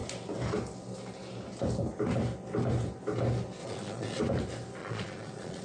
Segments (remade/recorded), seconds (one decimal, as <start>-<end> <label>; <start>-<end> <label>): 0.0-3.6 recorded; 3.6-4.2 remade; 4.2-4.8 recorded; 4.8-5.6 remade